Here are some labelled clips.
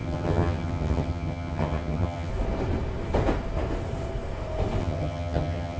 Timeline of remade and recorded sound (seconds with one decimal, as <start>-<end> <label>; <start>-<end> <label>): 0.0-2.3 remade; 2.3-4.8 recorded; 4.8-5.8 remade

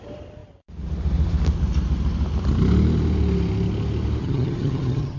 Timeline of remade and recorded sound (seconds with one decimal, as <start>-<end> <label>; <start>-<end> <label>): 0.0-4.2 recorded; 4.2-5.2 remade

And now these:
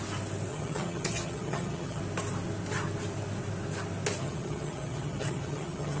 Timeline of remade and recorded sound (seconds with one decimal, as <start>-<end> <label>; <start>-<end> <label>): 0.0-0.5 recorded; 0.5-2.0 remade; 2.0-4.2 recorded; 4.2-6.0 remade

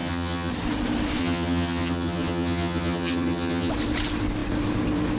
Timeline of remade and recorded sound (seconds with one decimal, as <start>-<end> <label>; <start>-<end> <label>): 0.0-0.5 remade; 0.5-1.2 recorded; 1.2-3.7 remade; 3.7-5.2 recorded

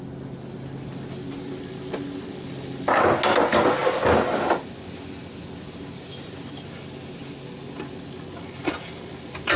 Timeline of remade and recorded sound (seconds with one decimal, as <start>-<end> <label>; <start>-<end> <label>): 0.0-9.6 recorded